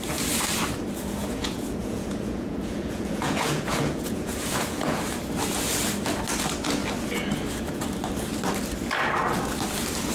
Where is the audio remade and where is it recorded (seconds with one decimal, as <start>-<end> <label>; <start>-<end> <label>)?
0.0-1.2 recorded; 1.2-5.0 remade; 5.0-10.1 recorded